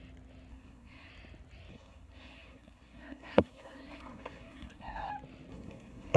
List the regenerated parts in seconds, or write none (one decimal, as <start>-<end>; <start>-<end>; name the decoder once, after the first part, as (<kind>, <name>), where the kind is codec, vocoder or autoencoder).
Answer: 0.5-1.1 (codec, SNAC); 1.7-5.1; 5.5-6.2